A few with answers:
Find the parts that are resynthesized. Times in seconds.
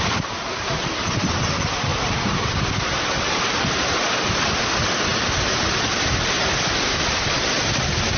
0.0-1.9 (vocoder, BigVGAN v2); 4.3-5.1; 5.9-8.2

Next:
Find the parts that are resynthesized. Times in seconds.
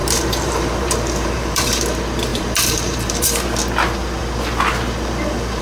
0.0-1.7 (vocoder, BigVGAN v2); 2.3-3.3